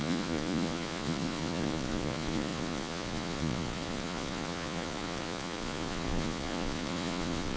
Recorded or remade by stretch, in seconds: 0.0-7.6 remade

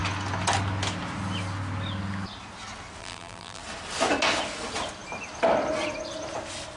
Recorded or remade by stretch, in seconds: 0.0-3.0 recorded; 3.0-3.6 remade; 3.6-6.8 recorded